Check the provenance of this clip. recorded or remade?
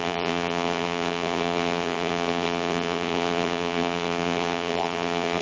remade